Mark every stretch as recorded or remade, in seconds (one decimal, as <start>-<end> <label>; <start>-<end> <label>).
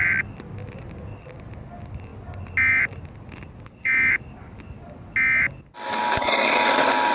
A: 0.0-7.1 recorded